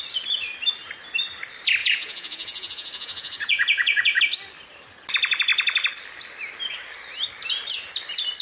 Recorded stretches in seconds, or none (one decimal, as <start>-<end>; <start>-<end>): 0.0-1.8; 4.2-8.4